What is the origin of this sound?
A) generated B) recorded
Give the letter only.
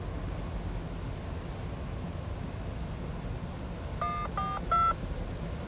B